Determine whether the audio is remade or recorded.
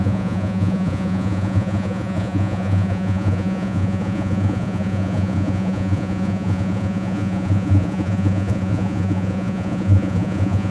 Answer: remade